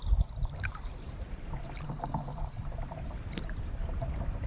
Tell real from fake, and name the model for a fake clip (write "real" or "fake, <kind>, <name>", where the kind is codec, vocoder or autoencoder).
fake, vocoder, BigVGAN v2